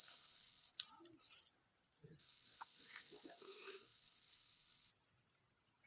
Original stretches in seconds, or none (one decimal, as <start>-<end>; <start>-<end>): 0.7-2.2; 4.9-5.9